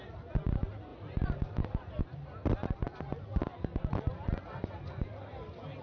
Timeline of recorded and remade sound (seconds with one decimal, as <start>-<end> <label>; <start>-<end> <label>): 0.0-5.8 recorded